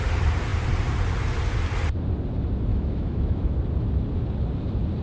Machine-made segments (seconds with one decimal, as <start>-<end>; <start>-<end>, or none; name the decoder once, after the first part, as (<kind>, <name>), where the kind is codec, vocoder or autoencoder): 2.7-3.5 (autoencoder, DAC-VAE)